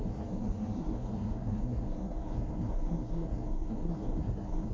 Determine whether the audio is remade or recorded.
remade